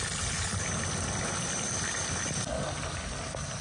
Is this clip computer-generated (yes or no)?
no